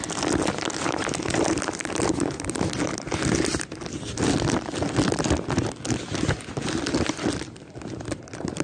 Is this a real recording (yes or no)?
yes